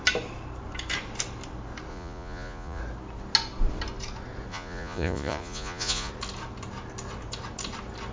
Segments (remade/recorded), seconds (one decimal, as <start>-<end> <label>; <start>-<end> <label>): 0.0-1.9 recorded; 1.9-2.8 remade; 2.8-4.5 recorded; 4.5-6.1 remade; 6.1-8.1 recorded